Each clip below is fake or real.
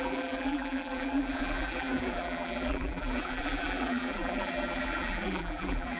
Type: fake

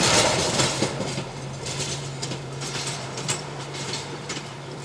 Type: fake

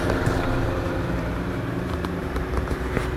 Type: fake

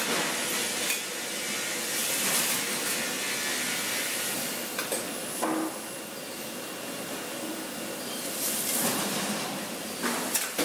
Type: real